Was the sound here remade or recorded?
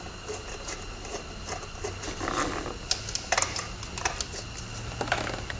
recorded